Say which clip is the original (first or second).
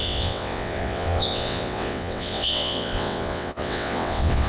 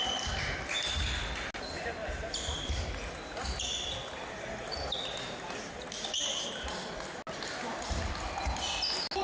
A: second